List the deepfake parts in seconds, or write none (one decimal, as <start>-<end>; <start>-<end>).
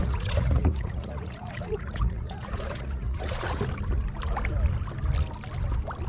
0.0-3.6